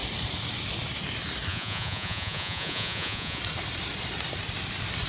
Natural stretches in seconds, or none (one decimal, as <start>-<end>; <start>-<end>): 0.0-1.5; 3.4-5.1